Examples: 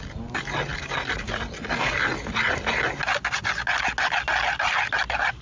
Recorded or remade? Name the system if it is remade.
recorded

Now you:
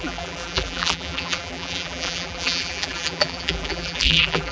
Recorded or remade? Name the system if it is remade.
remade, vocoder, BigVGAN v2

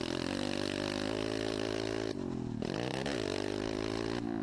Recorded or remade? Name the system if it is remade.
recorded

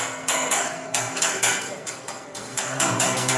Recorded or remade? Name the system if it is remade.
remade, codec, SNAC